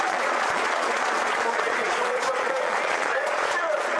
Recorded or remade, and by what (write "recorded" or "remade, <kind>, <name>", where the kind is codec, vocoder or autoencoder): remade, vocoder, Vocos